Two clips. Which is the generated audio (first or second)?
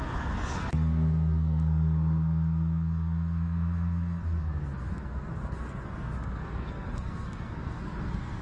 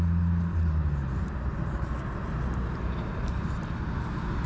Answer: first